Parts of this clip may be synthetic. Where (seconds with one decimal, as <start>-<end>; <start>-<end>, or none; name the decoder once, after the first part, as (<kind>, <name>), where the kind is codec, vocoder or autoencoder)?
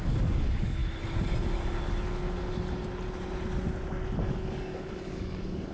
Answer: 0.0-0.8 (codec, DAC); 4.2-5.7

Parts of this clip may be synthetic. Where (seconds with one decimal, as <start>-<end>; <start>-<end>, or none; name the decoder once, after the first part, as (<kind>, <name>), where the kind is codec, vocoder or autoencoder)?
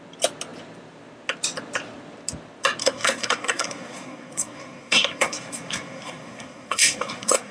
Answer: 2.8-7.5 (codec, SNAC)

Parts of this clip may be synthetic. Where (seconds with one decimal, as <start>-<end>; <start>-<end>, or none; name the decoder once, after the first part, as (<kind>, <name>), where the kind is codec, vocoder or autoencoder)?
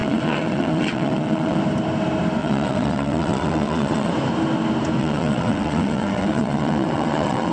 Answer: 0.0-1.6 (vocoder, WaveNeXt); 2.4-4.1; 5.0-7.5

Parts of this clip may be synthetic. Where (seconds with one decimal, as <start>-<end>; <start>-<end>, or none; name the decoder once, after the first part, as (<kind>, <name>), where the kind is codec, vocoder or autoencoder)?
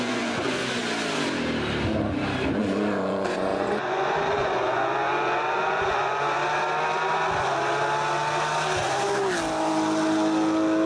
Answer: 0.0-0.6 (vocoder, Vocos); 2.6-6.4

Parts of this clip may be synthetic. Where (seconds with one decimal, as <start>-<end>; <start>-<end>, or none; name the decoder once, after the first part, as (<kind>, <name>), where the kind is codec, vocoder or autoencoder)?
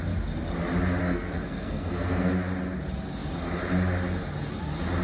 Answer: 1.0-2.3 (codec, SNAC)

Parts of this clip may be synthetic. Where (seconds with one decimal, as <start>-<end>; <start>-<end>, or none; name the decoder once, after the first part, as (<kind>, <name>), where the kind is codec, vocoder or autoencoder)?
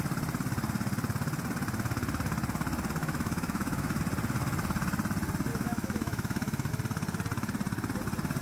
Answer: 3.0-4.0 (autoencoder, DAC-VAE); 5.5-6.7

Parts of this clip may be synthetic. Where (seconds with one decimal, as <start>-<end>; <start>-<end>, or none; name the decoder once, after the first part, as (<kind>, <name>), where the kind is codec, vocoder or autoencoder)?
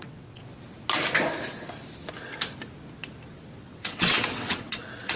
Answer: 0.0-0.5 (vocoder, WaveNeXt); 3.6-5.2